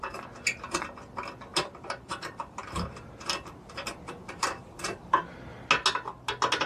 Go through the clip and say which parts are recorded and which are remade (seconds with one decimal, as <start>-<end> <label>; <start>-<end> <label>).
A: 0.0-1.5 recorded; 1.5-5.2 remade; 5.2-6.7 recorded